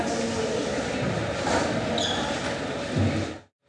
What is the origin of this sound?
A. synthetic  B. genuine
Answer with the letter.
B